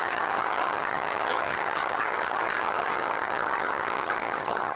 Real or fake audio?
fake